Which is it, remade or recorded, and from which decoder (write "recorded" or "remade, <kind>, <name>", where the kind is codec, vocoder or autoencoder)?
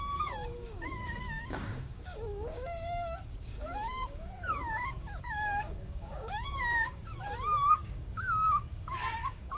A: remade, codec, DAC